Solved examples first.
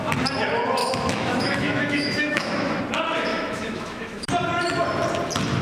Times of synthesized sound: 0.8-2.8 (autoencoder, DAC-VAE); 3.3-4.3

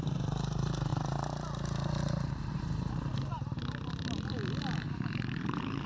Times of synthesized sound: 0.0-5.9 (vocoder, BigVGAN v2)

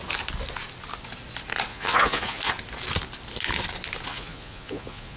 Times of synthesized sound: 1.7-2.5 (vocoder, Vocos); 4.1-5.2

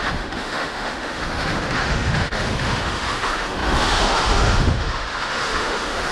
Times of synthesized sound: 0.0-6.1 (autoencoder, DAC-VAE)

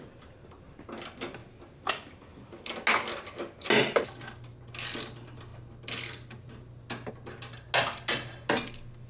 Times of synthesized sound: none

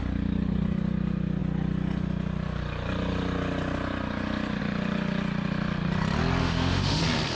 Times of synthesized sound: 6.4-7.0 (autoencoder, DAC-VAE)

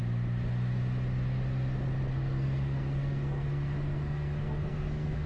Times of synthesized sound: 2.1-5.3 (codec, SNAC)